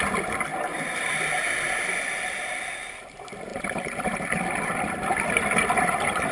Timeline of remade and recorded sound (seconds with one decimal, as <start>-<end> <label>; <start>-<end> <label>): 0.0-0.5 recorded; 0.5-1.3 remade; 1.3-3.5 recorded; 3.5-6.3 remade